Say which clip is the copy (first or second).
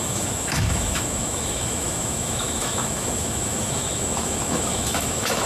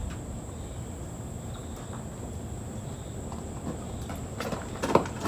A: first